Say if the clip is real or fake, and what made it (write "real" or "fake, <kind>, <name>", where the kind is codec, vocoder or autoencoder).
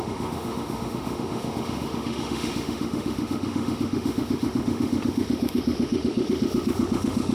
fake, autoencoder, DAC-VAE